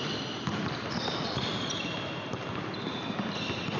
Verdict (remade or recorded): recorded